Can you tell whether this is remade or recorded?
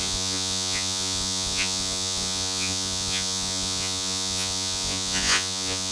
remade